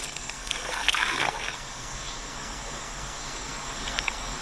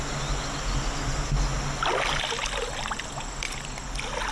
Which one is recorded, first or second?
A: second